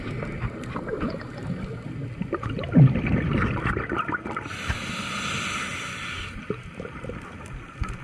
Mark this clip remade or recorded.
recorded